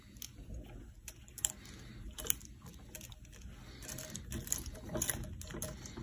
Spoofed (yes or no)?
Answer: no